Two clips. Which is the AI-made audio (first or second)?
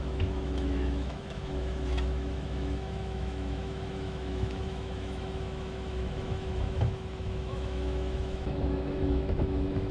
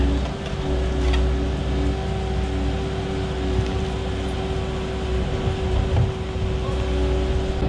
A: first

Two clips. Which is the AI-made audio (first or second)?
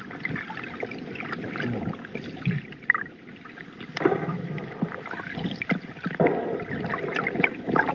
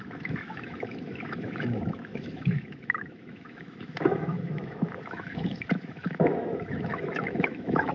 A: second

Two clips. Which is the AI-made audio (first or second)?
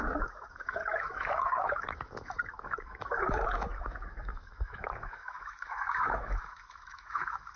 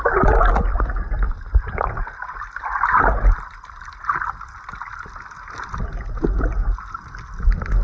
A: first